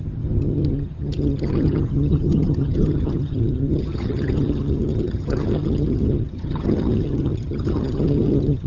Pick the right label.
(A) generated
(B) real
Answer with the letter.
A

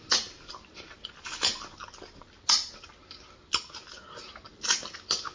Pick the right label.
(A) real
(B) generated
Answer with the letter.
A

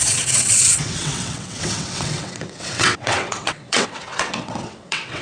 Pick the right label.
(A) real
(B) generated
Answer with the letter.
B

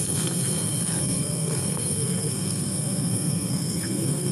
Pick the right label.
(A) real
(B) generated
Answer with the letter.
B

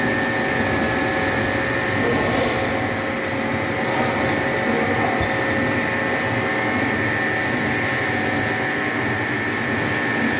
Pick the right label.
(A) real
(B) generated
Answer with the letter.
A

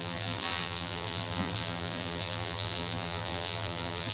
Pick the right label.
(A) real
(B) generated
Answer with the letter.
B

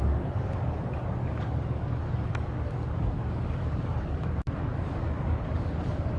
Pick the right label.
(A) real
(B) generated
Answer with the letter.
B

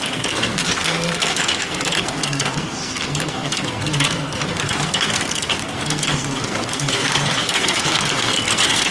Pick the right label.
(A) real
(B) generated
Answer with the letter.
B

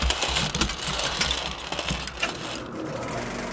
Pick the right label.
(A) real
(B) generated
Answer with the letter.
A